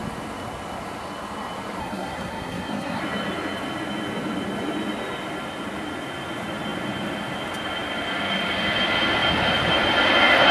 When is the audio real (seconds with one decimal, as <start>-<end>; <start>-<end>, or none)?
0.0-1.8; 3.0-10.5